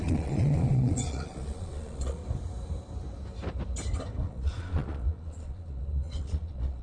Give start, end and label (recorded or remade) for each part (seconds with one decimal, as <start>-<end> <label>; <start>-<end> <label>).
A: 0.0-2.2 remade; 2.2-4.2 recorded; 4.2-6.8 remade

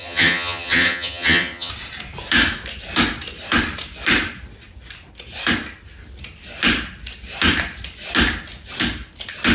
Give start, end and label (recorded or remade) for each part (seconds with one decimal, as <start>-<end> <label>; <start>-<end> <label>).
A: 0.0-1.7 remade; 1.7-9.5 recorded

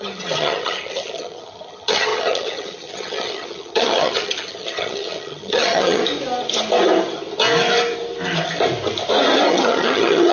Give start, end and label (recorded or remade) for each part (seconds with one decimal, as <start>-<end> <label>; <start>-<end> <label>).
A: 0.0-6.0 remade; 6.0-9.5 recorded; 9.5-10.3 remade